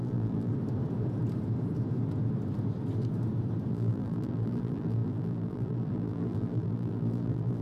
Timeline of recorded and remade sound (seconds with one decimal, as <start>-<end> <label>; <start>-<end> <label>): 0.0-0.5 remade; 0.5-3.7 recorded; 3.7-7.6 remade